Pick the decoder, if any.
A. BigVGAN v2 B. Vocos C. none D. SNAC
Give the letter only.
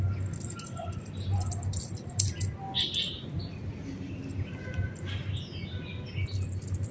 C